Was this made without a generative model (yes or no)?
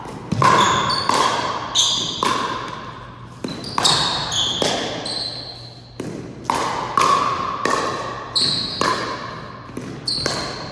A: yes